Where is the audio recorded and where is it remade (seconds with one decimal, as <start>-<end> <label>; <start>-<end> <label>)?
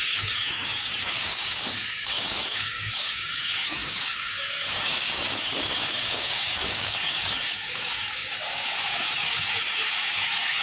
0.0-10.6 remade